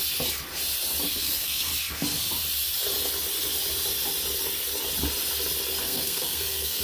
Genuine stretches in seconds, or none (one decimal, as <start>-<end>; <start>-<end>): 0.0-1.1; 1.7-5.8